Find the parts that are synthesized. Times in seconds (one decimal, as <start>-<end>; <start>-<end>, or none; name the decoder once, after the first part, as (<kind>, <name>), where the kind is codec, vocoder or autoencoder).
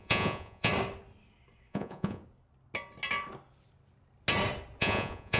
0.0-0.7 (vocoder, Vocos); 1.7-2.2; 4.8-5.4